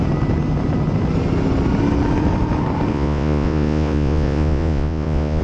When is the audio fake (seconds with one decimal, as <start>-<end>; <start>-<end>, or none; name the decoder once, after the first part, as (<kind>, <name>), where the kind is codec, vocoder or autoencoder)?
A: 2.9-5.4 (vocoder, Vocos)